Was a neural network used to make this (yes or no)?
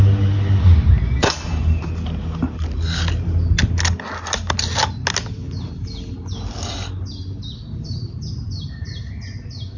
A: no